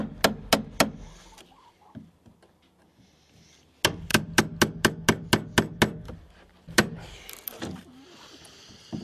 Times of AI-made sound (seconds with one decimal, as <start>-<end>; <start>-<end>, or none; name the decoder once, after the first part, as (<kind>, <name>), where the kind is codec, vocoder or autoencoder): none

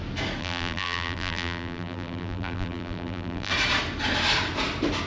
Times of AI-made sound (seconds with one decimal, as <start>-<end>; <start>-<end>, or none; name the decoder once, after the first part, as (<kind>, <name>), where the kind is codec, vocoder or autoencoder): 0.4-3.5 (vocoder, BigVGAN v2)

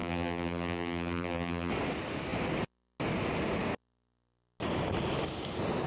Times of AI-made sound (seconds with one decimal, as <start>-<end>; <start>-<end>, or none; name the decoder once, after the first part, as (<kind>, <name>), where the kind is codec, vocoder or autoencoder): 0.0-1.7 (vocoder, BigVGAN v2)

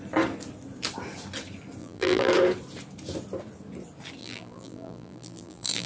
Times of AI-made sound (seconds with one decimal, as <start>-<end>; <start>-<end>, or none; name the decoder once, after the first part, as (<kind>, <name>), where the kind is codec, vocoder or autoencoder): 1.8-2.3 (vocoder, BigVGAN v2); 4.2-5.9

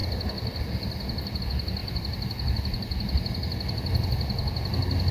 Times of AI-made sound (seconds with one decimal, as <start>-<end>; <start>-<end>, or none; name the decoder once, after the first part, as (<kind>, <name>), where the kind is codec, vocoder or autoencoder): none